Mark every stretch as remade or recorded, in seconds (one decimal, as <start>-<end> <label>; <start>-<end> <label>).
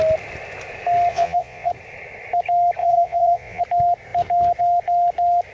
0.0-1.1 recorded; 1.1-1.7 remade; 1.7-2.8 recorded; 2.8-3.6 remade; 3.6-5.5 recorded